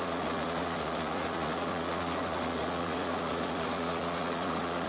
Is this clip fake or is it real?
fake